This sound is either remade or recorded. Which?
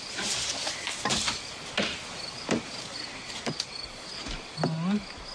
recorded